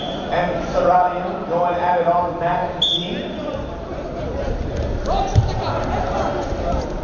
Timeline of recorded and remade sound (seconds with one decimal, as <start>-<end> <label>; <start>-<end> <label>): 0.0-7.0 recorded